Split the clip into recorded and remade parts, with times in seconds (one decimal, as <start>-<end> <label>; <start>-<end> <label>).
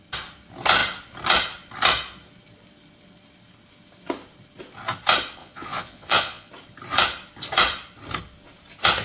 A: 0.0-5.4 recorded; 5.4-6.5 remade; 6.5-9.0 recorded